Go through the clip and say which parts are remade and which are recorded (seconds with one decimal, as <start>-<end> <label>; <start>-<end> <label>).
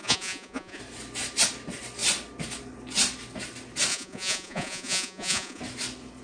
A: 0.0-0.8 remade; 0.8-3.9 recorded; 3.9-5.6 remade; 5.6-6.2 recorded